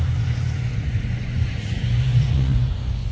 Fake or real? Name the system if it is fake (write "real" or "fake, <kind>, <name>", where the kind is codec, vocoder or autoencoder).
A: fake, vocoder, Vocos